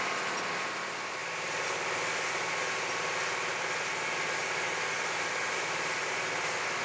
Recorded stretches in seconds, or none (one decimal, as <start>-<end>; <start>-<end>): 0.0-6.8